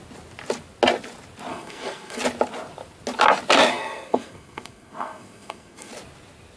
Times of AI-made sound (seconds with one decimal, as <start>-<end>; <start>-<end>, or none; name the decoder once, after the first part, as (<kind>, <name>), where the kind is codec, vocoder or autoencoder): 1.5-2.2 (codec, SNAC); 3.7-5.9